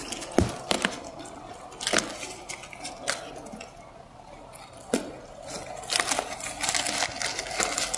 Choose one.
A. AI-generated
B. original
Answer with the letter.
B